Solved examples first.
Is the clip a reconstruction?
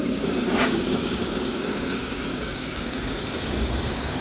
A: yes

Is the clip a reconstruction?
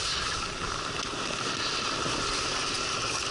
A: no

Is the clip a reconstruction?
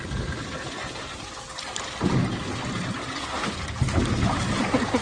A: no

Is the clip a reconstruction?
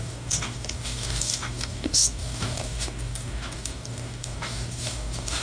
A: yes